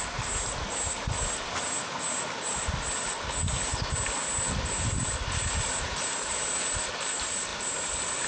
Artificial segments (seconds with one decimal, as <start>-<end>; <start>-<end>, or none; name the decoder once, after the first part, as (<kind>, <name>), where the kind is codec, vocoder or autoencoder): none